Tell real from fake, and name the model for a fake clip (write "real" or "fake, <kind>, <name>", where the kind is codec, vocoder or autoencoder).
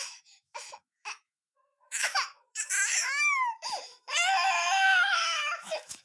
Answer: fake, autoencoder, DAC-VAE